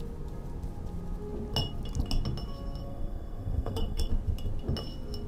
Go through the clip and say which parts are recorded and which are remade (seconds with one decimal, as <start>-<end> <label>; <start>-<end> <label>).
0.0-2.8 recorded; 2.8-4.1 remade; 4.1-5.3 recorded